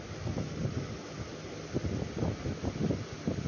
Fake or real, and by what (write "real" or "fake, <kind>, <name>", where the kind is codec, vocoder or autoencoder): real